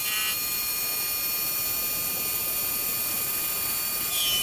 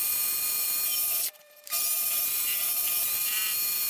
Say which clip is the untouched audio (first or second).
first